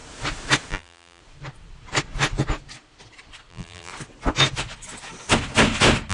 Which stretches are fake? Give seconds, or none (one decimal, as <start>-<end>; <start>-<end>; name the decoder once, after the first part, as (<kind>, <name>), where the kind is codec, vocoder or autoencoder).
0.7-1.2 (vocoder, BigVGAN v2); 3.5-3.9